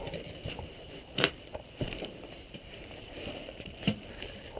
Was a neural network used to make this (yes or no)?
yes